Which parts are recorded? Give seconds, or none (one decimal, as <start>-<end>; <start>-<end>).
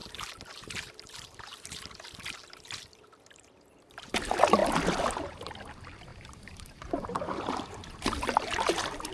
4.6-5.1